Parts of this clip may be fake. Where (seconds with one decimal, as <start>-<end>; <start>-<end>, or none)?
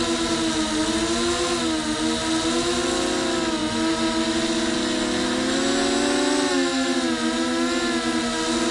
none